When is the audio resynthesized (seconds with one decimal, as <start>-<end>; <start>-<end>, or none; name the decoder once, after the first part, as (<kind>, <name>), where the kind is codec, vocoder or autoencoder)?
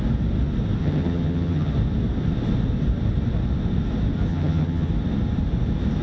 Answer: 0.8-1.7 (vocoder, HiFi-GAN); 4.3-4.9